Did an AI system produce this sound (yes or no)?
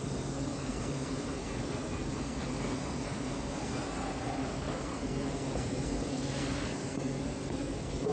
yes